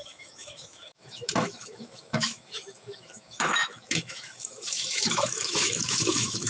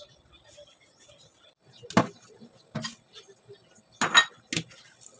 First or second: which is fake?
first